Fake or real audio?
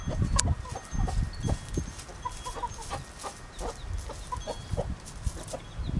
real